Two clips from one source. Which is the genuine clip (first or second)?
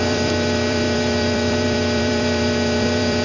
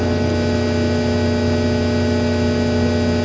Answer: second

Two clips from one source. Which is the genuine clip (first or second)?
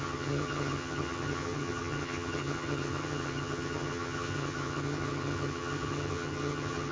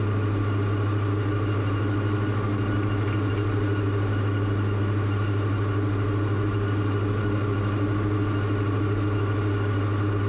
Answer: second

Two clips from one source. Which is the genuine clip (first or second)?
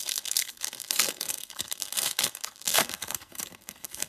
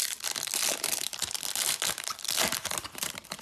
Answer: second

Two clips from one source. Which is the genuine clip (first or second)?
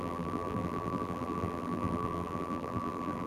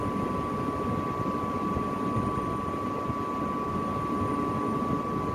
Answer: second